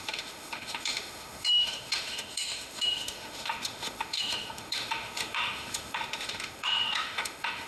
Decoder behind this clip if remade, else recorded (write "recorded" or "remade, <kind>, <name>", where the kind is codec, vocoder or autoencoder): remade, autoencoder, DAC-VAE